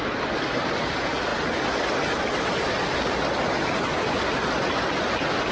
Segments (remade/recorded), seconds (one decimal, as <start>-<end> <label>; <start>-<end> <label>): 0.0-5.5 recorded